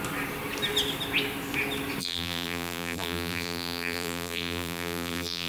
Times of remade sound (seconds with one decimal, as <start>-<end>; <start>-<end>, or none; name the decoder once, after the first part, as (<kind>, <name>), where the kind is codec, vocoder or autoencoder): 2.0-5.5 (vocoder, BigVGAN v2)